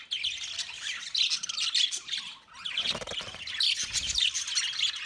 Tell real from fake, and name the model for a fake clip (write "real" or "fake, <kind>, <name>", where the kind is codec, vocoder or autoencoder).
real